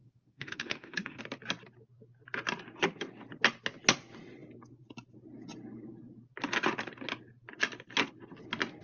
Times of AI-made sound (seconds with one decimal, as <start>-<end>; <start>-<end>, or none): 0.0-1.2